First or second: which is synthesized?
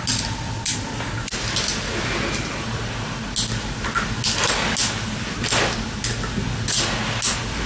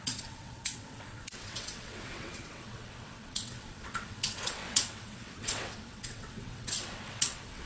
second